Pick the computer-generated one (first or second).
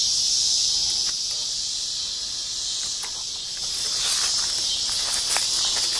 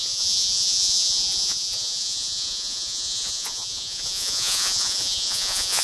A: second